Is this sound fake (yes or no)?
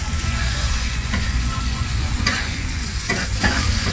yes